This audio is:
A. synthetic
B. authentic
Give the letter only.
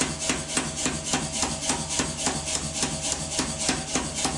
B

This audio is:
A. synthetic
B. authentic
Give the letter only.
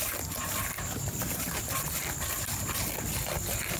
B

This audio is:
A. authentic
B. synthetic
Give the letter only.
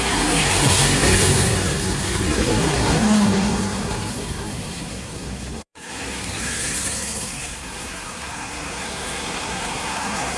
B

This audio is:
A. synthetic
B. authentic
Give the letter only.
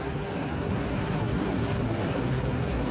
A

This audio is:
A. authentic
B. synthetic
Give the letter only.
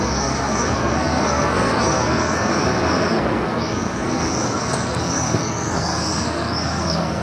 B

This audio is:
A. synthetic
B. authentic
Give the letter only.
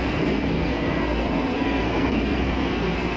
A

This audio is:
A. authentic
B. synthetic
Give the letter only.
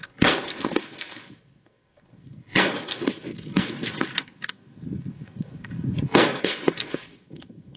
B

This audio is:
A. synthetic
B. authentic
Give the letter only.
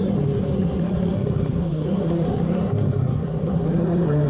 A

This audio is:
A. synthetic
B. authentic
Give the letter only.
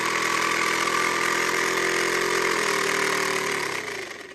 B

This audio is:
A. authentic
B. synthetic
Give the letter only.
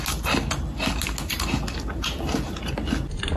A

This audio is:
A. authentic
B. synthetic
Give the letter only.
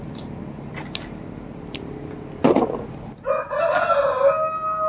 A